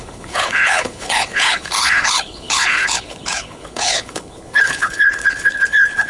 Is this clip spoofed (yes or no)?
yes